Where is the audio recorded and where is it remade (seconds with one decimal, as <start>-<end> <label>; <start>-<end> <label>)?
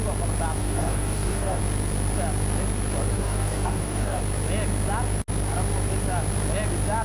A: 0.0-0.6 recorded; 0.6-1.6 remade; 1.6-3.1 recorded; 3.1-4.2 remade; 4.2-7.0 recorded